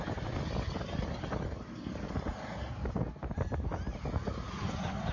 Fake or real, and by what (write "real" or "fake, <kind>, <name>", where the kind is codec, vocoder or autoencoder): real